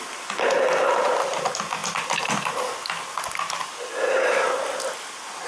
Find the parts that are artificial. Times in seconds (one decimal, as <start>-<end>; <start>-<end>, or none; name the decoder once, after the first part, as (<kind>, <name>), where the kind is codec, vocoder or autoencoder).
none